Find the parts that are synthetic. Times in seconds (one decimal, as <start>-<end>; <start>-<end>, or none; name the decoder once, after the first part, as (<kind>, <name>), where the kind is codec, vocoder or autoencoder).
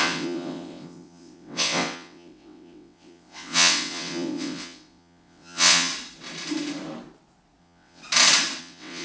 0.0-5.9 (vocoder, WaveNeXt); 7.6-8.0; 8.6-9.0